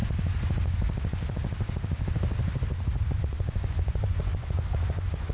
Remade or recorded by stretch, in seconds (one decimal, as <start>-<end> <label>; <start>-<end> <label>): 0.0-3.2 recorded; 3.2-5.3 remade